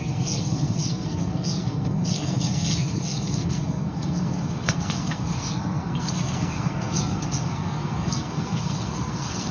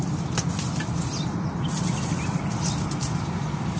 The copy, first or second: first